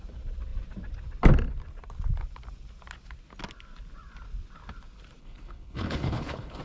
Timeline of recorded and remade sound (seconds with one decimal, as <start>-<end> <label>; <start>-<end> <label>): 0.0-5.2 recorded; 5.2-6.6 remade